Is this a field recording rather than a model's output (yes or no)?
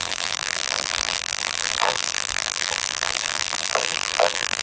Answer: no